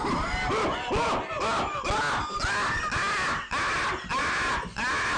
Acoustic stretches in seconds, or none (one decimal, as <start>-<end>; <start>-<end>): 0.0-5.2